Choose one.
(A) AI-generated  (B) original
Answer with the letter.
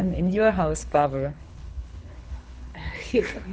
A